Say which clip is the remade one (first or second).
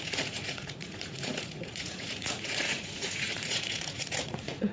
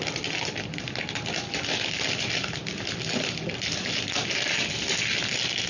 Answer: first